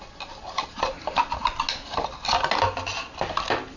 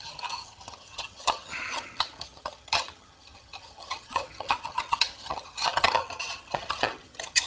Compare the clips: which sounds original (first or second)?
first